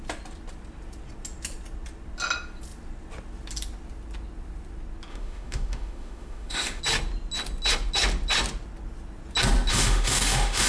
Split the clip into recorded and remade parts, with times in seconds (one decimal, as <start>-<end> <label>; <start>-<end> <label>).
0.0-5.1 recorded; 5.1-6.8 remade; 6.8-9.7 recorded; 9.7-10.7 remade